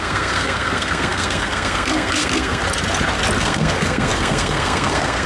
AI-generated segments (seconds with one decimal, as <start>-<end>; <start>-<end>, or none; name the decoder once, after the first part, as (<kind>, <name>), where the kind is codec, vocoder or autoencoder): 0.0-2.6 (codec, SNAC); 3.4-5.3